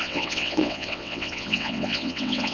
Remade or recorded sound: remade